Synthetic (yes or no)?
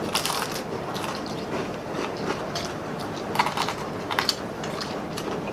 yes